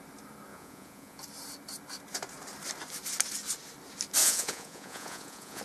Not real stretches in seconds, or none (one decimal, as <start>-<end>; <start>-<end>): 0.5-1.2; 4.2-5.6